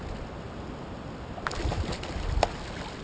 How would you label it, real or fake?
real